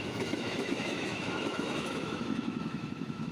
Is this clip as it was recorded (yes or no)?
no